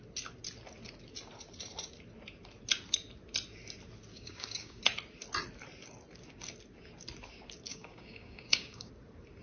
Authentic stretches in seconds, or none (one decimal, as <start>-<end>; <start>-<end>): 0.0-4.1; 4.8-7.7; 8.9-9.4